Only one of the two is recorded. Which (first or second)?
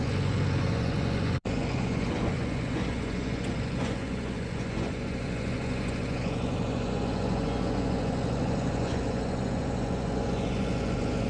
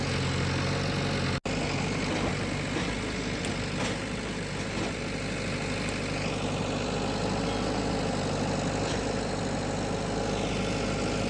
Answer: second